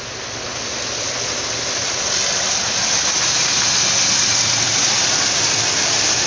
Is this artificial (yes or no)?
no